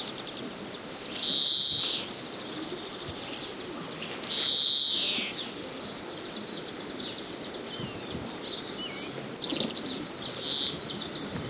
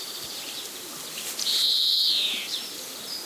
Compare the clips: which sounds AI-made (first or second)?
second